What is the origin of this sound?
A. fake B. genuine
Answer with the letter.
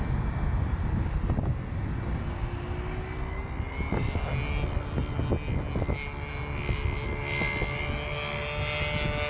B